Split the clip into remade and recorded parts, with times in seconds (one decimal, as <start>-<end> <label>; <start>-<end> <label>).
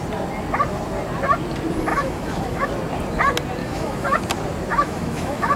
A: 0.0-1.9 recorded; 1.9-2.7 remade; 2.7-3.6 recorded; 3.6-4.2 remade; 4.2-4.7 recorded; 4.7-5.6 remade